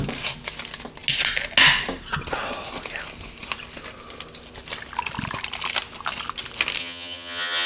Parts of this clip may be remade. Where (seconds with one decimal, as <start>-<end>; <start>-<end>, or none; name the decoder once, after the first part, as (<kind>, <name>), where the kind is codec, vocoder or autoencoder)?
6.8-7.7 (vocoder, HiFi-GAN)